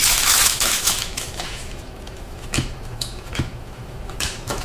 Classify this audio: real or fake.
fake